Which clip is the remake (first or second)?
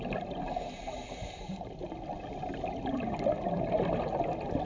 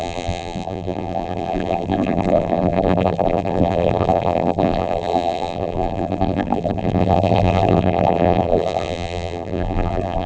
second